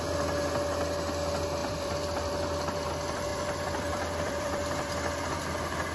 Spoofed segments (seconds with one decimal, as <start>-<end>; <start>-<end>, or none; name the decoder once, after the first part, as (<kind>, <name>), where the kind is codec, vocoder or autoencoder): 1.6-2.9 (vocoder, BigVGAN v2); 3.3-5.4